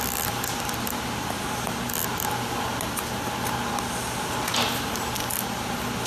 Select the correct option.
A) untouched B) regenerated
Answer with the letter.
A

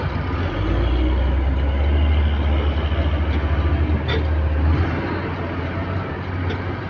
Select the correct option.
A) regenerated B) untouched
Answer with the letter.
B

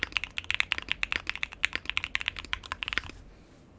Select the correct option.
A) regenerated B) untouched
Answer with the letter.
B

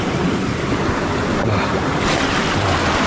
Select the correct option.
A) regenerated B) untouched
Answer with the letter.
B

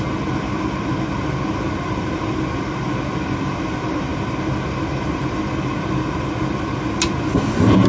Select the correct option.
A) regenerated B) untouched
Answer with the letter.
B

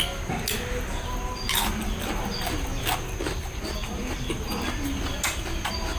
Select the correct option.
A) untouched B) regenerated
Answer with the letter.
A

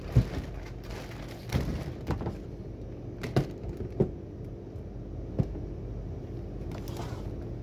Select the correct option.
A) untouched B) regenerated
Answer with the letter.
A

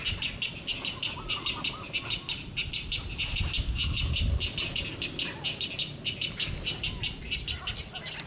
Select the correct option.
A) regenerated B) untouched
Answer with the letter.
B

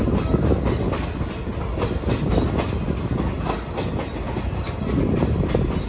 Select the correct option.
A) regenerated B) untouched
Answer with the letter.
B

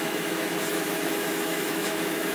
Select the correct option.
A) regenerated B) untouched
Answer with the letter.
A